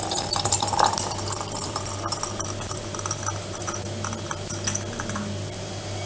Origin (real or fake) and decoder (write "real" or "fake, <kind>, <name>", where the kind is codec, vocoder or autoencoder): real